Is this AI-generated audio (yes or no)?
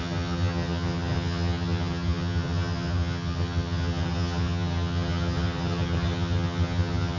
yes